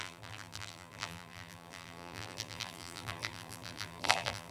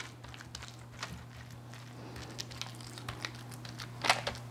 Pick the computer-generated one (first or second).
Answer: first